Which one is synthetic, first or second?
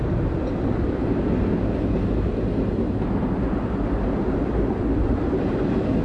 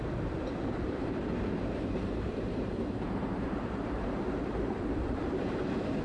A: second